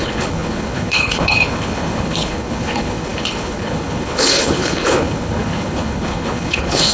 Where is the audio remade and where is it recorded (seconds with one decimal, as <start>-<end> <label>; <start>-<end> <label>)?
0.0-6.9 remade